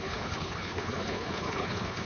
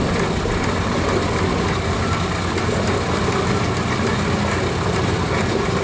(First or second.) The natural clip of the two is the second